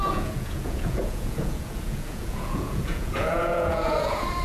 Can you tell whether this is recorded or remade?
remade